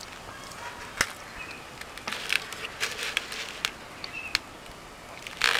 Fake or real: real